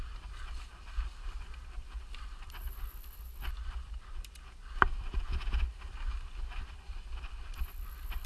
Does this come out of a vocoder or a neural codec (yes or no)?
yes